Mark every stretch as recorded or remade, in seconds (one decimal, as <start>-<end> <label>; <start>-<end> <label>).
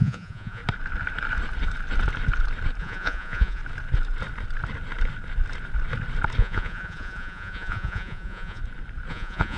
0.0-0.6 remade; 0.6-2.8 recorded; 2.8-3.6 remade; 3.6-6.4 recorded; 6.4-8.6 remade; 8.6-9.1 recorded; 9.1-9.6 remade